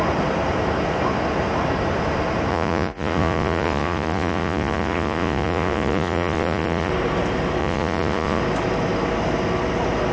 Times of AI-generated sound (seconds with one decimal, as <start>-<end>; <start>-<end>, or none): 2.5-6.9; 7.6-8.4